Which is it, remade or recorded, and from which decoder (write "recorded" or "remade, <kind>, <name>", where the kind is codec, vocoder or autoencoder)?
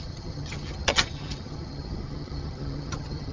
remade, vocoder, HiFi-GAN